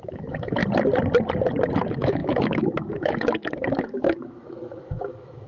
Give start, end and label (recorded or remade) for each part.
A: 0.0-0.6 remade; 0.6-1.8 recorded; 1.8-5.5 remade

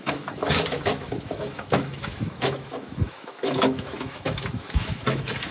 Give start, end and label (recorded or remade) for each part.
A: 0.0-5.5 remade

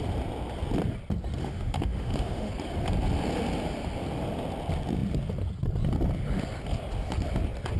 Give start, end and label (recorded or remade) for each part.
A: 0.0-1.4 recorded; 1.4-2.5 remade; 2.5-7.8 recorded

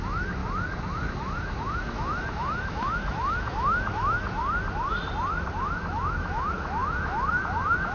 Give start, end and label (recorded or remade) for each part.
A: 0.0-0.4 remade; 0.4-1.1 recorded; 1.1-4.4 remade; 4.4-5.5 recorded; 5.5-7.9 remade

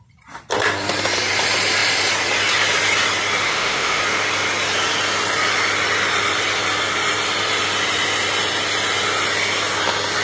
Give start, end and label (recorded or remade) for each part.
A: 0.0-3.4 recorded; 3.4-4.0 remade; 4.0-10.2 recorded

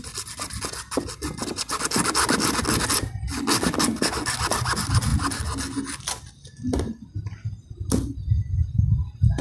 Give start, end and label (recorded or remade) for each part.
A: 0.0-9.4 recorded

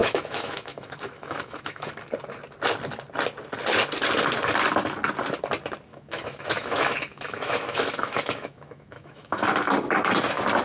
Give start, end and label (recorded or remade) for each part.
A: 0.0-1.9 remade; 1.9-5.9 recorded; 5.9-9.5 remade; 9.5-10.6 recorded

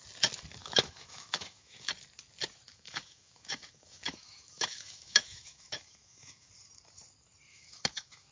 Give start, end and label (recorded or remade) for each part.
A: 0.0-0.6 recorded; 0.6-1.9 remade; 1.9-2.7 recorded; 2.7-6.5 remade; 6.5-7.5 recorded; 7.5-8.3 remade